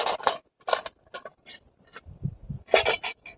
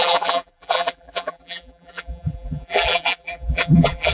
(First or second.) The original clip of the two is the first